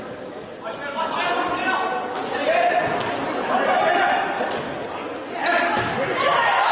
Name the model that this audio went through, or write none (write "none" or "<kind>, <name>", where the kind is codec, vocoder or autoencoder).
none